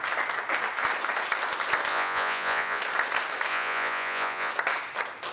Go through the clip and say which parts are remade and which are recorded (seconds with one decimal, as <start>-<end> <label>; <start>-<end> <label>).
0.0-1.9 recorded; 1.9-2.8 remade; 2.8-3.5 recorded; 3.5-4.5 remade; 4.5-5.3 recorded